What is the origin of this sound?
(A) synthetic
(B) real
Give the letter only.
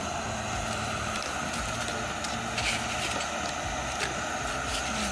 B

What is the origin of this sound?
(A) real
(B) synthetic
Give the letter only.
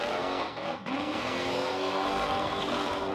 B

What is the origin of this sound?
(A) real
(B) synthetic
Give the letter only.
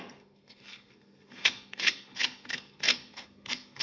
B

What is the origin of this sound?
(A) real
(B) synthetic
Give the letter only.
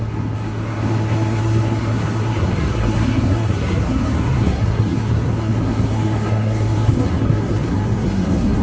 B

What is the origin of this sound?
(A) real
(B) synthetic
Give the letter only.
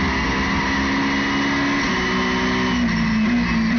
A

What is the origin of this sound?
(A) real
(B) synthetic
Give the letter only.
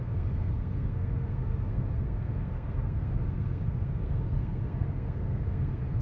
B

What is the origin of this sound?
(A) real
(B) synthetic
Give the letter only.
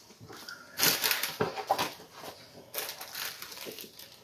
A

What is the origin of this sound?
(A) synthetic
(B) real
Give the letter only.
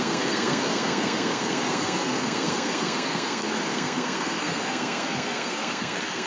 A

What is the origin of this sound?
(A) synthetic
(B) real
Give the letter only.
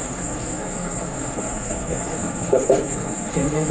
A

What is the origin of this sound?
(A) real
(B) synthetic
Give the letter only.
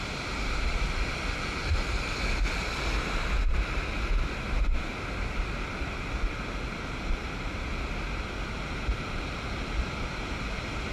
A